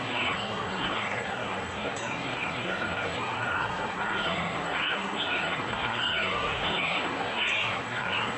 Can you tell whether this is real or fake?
fake